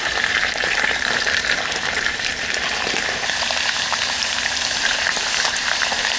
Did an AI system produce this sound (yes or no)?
yes